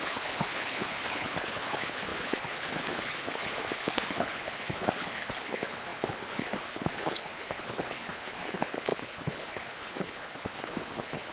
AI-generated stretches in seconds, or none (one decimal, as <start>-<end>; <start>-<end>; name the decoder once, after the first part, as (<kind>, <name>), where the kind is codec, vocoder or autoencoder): 0.0-11.3 (codec, HILCodec)